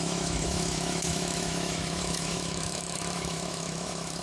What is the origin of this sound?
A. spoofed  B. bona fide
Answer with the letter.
A